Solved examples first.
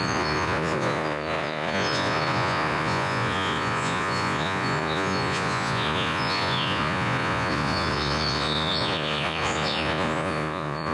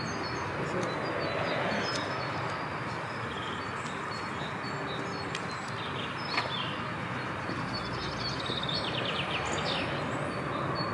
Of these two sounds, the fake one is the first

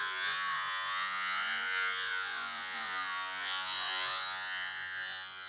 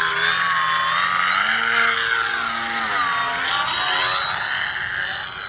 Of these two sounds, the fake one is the first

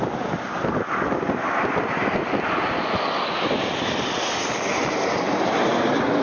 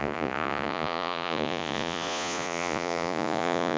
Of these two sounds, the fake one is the second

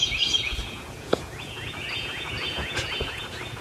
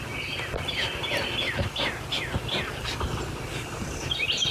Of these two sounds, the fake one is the first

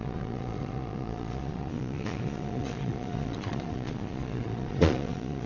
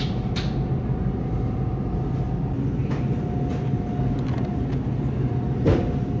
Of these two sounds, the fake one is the first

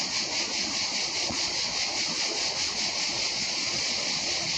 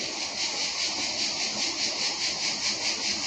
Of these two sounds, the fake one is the first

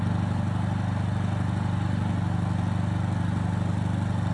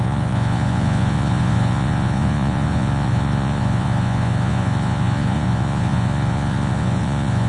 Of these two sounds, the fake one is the second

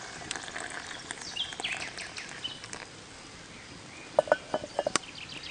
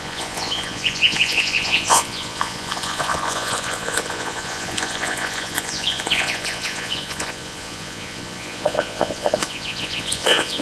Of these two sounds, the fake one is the second